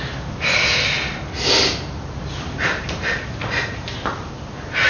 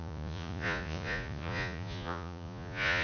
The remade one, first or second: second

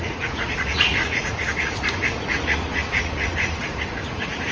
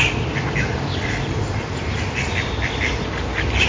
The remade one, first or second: first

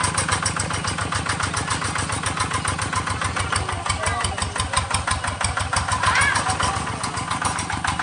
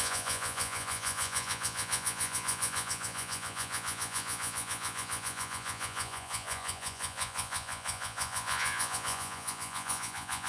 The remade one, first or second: second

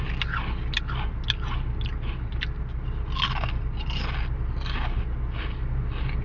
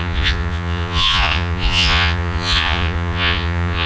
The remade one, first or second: second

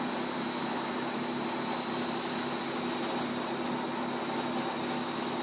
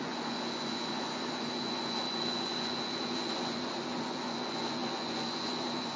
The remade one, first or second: second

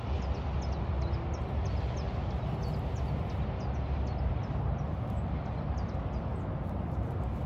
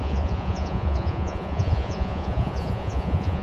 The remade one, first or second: second